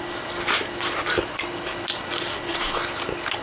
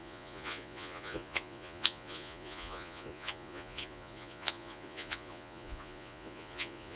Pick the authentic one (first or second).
first